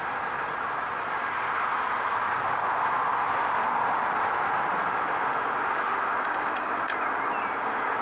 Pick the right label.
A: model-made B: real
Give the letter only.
B